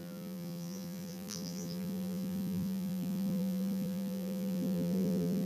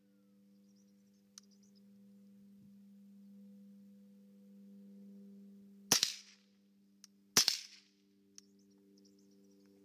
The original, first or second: second